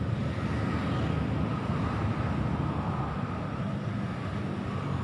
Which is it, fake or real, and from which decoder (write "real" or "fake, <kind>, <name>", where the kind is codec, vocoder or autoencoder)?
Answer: real